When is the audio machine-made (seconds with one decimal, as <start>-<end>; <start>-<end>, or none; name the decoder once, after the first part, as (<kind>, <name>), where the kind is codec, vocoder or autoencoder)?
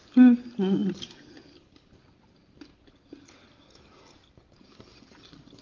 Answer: none